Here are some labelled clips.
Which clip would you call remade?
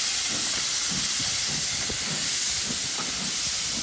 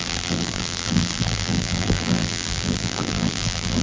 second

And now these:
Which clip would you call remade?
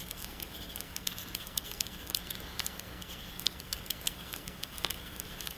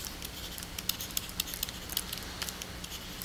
first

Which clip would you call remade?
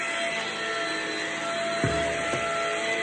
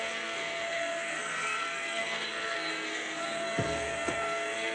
second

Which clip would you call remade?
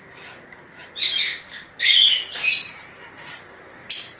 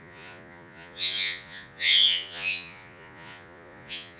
second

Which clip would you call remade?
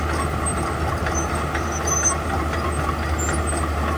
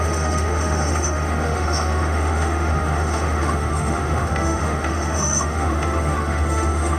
second